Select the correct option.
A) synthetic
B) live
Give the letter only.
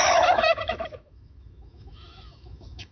A